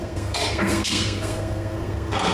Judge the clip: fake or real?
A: fake